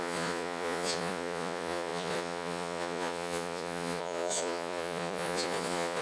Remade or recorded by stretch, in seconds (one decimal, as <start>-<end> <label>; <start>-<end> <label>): 0.0-6.0 remade